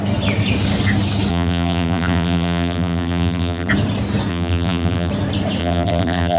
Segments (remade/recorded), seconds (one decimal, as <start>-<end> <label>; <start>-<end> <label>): 0.0-1.3 recorded; 1.3-3.7 remade; 3.7-4.3 recorded; 4.3-5.1 remade; 5.1-5.6 recorded; 5.6-6.4 remade